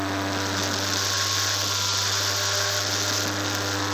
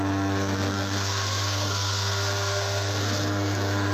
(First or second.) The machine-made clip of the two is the second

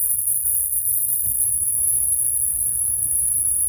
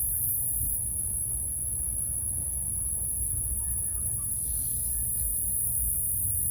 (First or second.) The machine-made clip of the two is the first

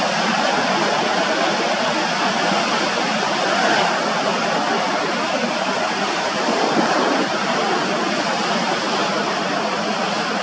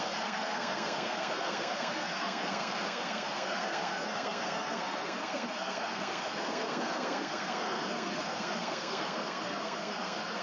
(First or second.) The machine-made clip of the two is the second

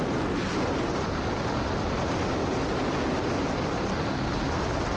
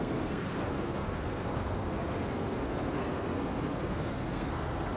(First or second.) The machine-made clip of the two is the second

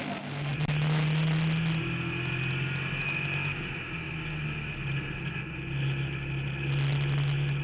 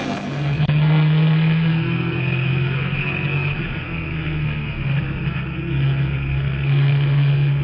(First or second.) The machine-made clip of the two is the second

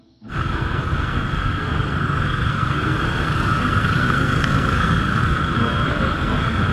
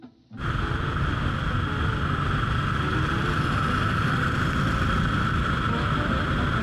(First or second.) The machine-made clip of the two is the first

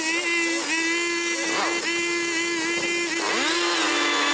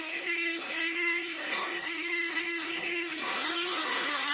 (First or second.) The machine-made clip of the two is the second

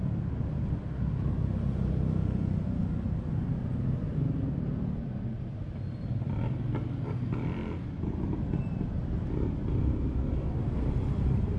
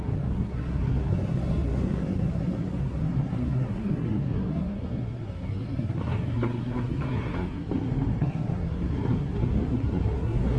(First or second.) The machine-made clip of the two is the second